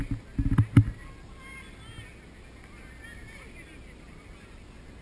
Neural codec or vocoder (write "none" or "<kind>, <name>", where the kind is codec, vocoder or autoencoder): none